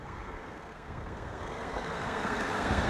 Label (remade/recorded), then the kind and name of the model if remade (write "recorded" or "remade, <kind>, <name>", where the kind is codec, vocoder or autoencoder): remade, codec, SNAC